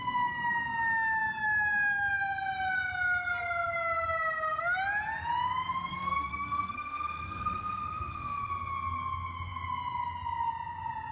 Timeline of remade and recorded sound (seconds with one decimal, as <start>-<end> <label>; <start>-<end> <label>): 0.0-5.9 recorded; 5.9-8.5 remade; 8.5-11.1 recorded